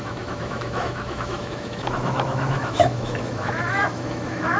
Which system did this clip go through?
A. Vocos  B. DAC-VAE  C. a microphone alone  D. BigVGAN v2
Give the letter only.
B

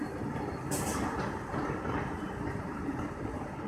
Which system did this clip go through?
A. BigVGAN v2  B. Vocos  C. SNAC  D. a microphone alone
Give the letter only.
A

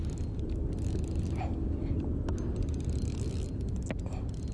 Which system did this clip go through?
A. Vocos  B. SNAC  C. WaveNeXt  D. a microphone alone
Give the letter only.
D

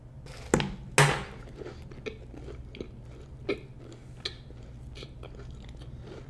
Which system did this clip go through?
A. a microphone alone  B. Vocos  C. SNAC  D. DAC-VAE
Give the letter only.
A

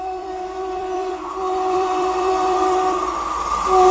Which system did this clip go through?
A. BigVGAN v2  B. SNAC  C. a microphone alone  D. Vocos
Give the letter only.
A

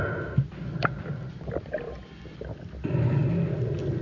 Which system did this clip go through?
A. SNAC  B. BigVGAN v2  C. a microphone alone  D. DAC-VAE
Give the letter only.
C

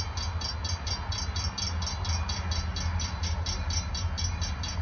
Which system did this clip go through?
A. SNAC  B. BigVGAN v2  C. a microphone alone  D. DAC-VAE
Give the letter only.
C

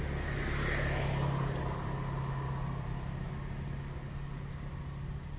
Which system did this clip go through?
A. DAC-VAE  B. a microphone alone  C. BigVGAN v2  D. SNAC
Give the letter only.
B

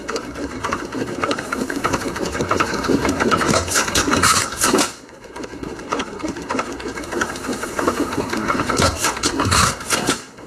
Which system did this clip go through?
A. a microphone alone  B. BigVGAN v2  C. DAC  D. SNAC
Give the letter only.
D